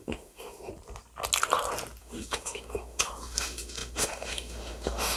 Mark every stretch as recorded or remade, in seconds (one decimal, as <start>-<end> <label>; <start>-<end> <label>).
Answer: 0.0-0.7 remade; 0.7-2.0 recorded; 2.0-5.2 remade